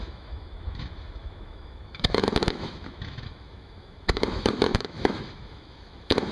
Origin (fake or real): fake